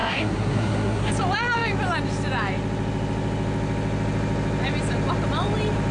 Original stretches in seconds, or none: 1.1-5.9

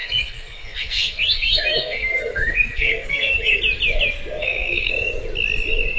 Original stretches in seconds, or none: 3.6-4.4; 4.9-6.0

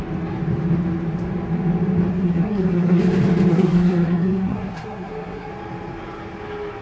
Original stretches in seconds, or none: 0.0-2.1; 3.0-3.5; 5.5-6.8

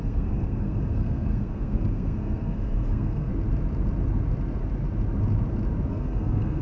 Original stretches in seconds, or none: 3.3-5.9